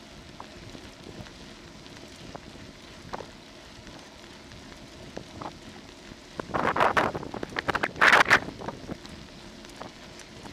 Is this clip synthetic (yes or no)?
no